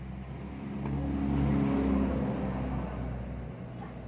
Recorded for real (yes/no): yes